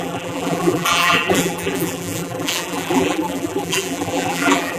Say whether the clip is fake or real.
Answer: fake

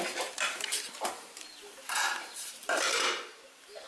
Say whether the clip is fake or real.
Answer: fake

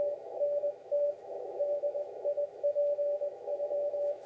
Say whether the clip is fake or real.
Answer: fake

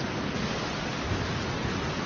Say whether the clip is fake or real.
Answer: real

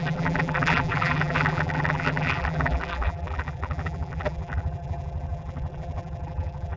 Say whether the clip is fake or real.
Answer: fake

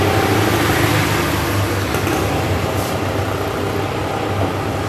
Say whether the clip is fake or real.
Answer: real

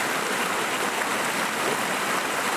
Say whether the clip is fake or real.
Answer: real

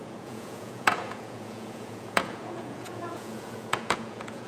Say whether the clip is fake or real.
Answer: fake